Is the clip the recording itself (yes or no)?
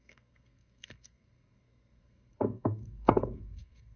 no